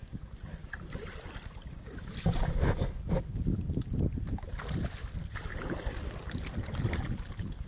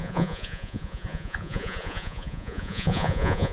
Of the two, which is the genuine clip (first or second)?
first